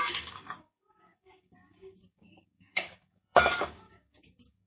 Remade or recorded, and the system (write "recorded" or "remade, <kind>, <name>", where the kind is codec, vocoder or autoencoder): remade, codec, DAC